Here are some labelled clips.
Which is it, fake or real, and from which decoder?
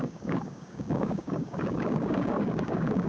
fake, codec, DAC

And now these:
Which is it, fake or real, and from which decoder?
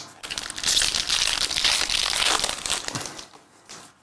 real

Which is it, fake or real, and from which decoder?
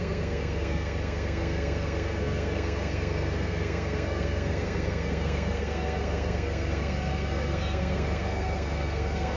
fake, codec, SNAC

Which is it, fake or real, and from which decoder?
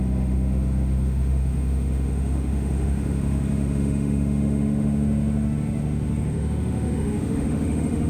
fake, autoencoder, DAC-VAE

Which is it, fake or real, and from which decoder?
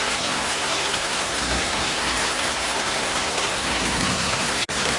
fake, codec, SNAC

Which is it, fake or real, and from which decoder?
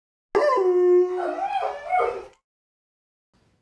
real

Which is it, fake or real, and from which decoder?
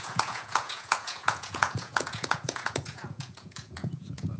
fake, vocoder, Vocos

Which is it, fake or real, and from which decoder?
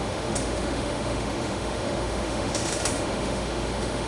fake, autoencoder, DAC-VAE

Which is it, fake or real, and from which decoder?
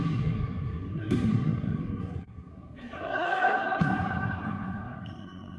fake, codec, SNAC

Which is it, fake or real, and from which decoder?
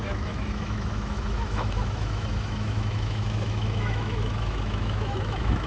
fake, autoencoder, DAC-VAE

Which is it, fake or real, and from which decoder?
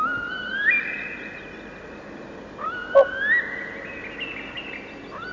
real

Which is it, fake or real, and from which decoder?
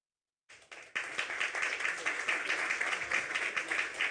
real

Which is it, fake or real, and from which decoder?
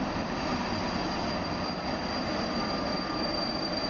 real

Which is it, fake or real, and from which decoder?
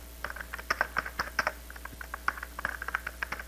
real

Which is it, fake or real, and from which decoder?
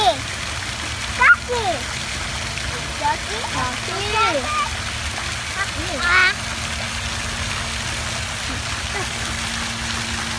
real